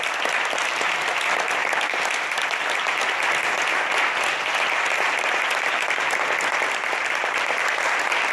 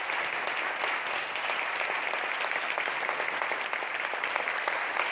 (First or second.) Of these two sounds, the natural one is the second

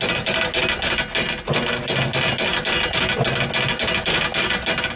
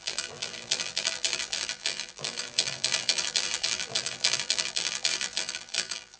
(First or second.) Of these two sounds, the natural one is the first